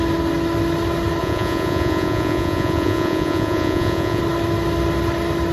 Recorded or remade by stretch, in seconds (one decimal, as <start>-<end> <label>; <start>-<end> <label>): 0.0-1.2 recorded; 1.2-4.2 remade; 4.2-5.5 recorded